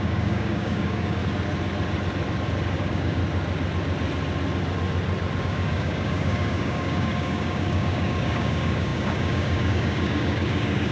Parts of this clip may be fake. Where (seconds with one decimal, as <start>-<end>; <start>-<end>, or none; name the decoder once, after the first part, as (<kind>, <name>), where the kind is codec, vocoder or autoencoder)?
0.0-1.2 (codec, DAC); 2.8-3.2; 5.4-10.9